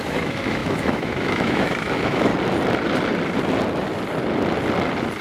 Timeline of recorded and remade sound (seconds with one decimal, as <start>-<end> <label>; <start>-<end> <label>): 0.0-2.3 remade; 2.3-5.2 recorded